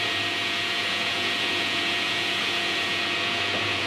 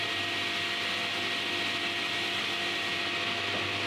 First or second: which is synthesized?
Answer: first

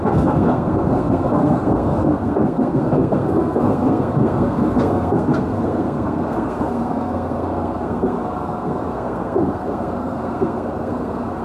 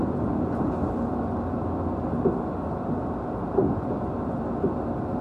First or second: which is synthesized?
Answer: first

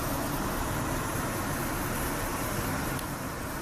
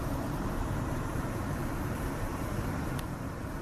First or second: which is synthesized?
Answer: second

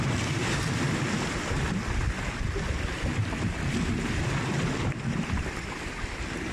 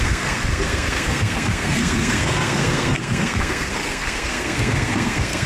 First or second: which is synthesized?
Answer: second